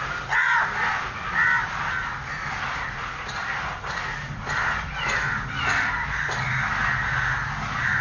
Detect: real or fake real